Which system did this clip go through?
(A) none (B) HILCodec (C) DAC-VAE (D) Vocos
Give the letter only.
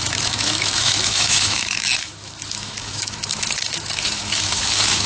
C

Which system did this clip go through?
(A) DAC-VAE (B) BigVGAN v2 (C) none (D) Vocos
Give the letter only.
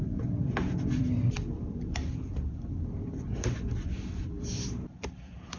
B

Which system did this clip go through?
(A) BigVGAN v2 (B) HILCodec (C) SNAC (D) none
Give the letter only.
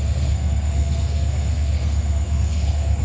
C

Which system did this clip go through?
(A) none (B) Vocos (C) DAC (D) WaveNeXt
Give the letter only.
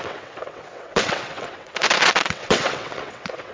D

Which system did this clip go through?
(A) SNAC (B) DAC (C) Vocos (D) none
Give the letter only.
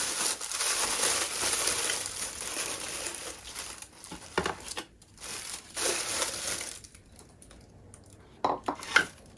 D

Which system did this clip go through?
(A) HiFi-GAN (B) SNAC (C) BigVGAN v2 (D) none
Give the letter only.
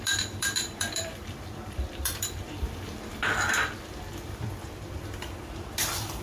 C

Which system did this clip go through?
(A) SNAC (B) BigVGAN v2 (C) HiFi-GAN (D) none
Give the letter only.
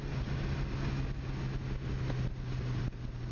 D